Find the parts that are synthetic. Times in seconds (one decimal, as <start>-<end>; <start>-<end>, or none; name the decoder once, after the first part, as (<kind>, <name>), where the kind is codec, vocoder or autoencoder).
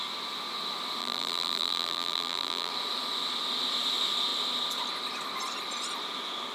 1.0-2.7 (vocoder, BigVGAN v2)